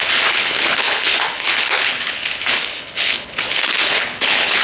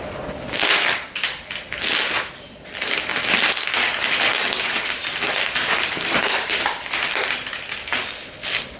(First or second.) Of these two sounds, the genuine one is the second